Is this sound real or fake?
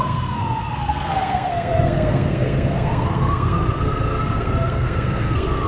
fake